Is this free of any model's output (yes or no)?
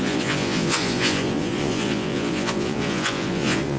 no